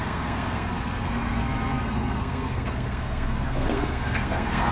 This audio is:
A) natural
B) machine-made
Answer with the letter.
B